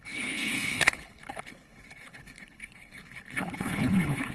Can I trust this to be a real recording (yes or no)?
no